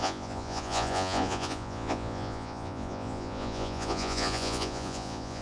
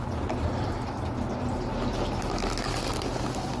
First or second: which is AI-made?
first